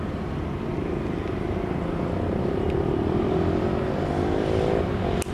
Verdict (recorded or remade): recorded